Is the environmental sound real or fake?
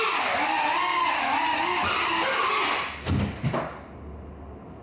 real